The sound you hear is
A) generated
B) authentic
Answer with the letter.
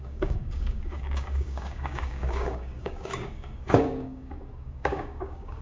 A